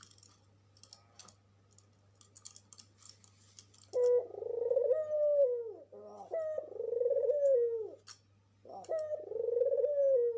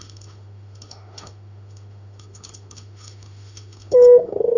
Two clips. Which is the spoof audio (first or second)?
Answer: second